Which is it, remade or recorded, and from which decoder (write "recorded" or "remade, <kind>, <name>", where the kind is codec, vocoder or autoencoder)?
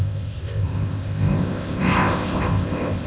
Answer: remade, codec, ZipCodec